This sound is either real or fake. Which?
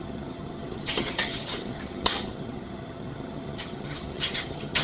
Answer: fake